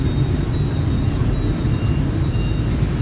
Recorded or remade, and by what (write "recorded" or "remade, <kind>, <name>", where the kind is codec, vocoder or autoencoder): recorded